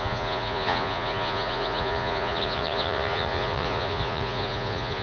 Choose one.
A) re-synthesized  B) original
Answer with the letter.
A